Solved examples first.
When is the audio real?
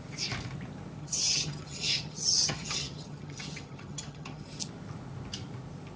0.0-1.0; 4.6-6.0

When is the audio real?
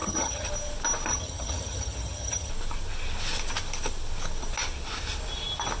0.5-1.1; 2.5-5.8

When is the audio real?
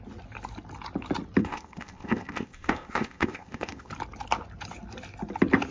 0.0-1.4; 3.9-5.7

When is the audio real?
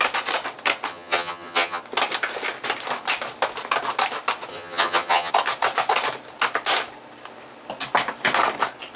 0.0-0.9; 1.8-4.5; 5.3-9.0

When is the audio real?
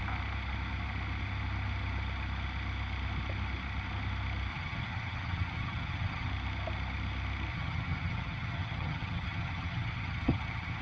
0.0-4.5; 6.3-7.5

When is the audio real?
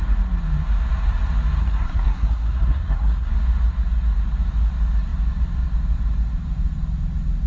0.0-1.6; 3.3-7.5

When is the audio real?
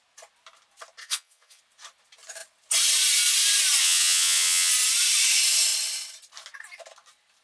0.0-1.0; 1.6-3.8; 4.7-7.4